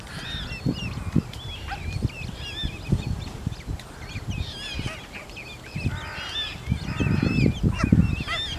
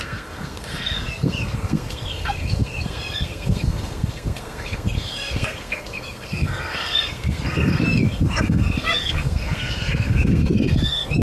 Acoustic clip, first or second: first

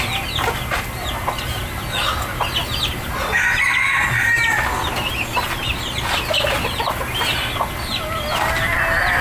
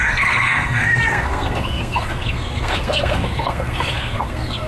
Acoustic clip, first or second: first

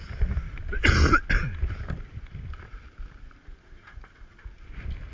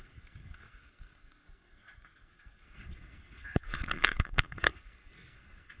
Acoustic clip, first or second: first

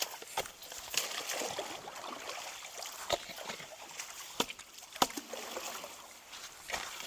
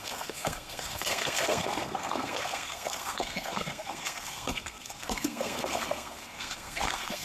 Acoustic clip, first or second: first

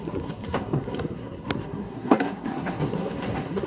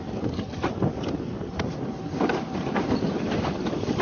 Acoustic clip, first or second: second